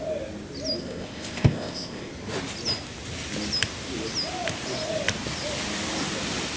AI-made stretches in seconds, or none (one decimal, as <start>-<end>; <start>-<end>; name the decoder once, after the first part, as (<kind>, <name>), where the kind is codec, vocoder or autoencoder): 0.8-2.1 (codec, ZipCodec)